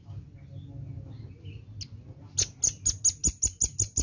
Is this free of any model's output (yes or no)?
yes